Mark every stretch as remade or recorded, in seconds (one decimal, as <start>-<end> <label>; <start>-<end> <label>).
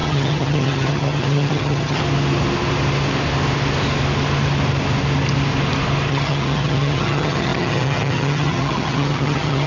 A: 0.0-2.0 remade; 2.0-6.1 recorded; 6.1-9.7 remade